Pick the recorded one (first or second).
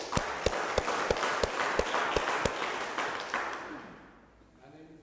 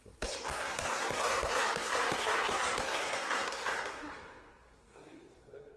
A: first